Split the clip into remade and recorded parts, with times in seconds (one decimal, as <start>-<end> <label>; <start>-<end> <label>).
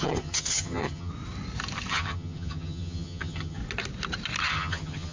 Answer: 0.0-1.1 remade; 1.1-1.9 recorded; 1.9-3.6 remade; 3.6-4.4 recorded; 4.4-5.1 remade